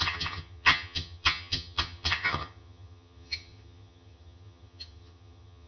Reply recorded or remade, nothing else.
remade